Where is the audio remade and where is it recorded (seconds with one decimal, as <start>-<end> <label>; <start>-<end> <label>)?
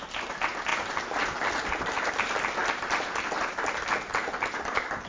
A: 0.0-5.1 recorded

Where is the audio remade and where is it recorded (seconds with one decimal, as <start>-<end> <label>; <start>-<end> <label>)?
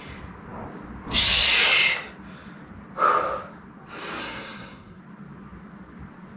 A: 0.0-4.2 recorded; 4.2-5.0 remade; 5.0-6.4 recorded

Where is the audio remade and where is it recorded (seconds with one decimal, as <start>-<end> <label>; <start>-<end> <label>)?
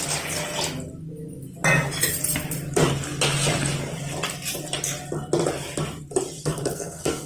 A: 0.0-6.4 recorded; 6.4-7.3 remade